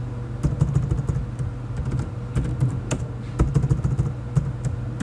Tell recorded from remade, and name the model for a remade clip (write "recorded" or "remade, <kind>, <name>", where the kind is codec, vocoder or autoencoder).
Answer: recorded